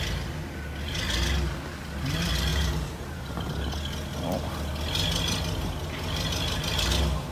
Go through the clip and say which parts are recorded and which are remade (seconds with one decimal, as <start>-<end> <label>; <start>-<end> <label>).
0.0-2.5 recorded; 2.5-3.2 remade; 3.2-7.3 recorded